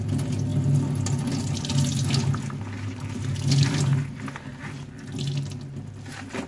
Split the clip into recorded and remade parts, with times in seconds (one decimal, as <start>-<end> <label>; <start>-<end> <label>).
0.0-6.5 recorded